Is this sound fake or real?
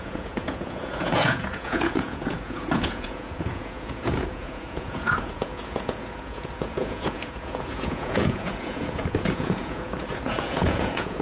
fake